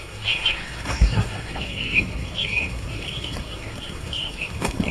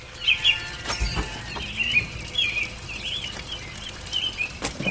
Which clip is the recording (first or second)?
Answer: second